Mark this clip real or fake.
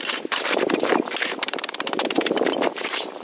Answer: fake